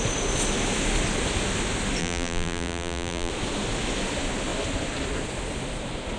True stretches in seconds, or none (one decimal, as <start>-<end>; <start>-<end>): 0.0-2.0; 3.3-6.2